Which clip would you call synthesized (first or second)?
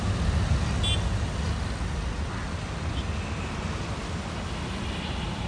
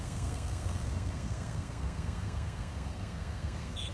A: second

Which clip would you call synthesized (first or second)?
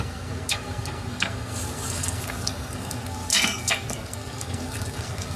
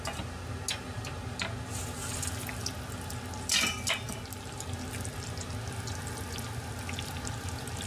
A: first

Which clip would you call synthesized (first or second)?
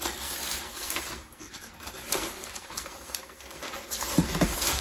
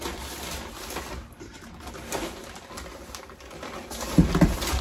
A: first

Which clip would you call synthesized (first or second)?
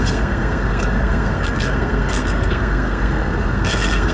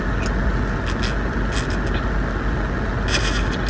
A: first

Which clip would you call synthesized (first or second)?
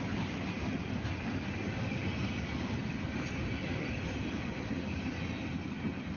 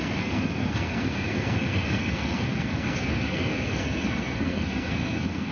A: second